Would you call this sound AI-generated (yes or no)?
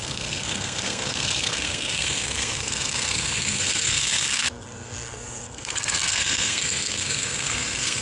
yes